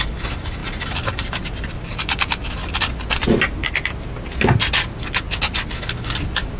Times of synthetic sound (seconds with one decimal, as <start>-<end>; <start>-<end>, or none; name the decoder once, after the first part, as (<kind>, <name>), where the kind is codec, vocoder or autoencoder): 0.6-2.5 (vocoder, BigVGAN v2)